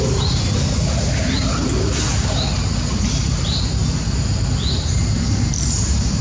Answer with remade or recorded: recorded